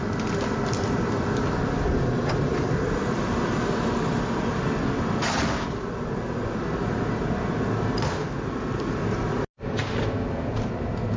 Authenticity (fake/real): real